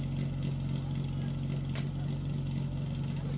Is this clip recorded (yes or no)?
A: yes